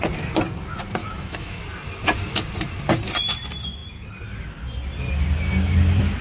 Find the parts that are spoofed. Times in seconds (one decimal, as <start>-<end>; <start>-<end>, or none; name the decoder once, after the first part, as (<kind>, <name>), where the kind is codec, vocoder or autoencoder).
1.0-1.6 (autoencoder, DAC-VAE)